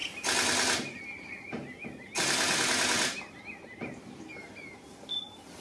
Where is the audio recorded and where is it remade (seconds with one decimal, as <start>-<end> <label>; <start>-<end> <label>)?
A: 0.0-5.6 recorded